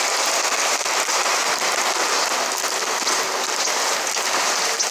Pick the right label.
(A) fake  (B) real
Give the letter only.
B